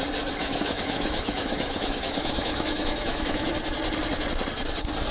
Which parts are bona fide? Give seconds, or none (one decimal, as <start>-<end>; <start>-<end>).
0.0-0.4; 3.5-5.1